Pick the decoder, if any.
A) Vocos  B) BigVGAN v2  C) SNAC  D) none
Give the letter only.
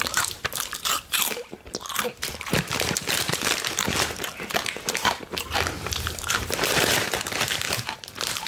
B